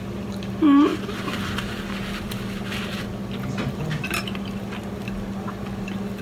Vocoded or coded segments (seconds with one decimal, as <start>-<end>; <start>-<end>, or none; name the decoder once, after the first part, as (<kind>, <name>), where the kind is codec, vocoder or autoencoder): none